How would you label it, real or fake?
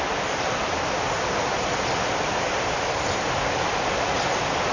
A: real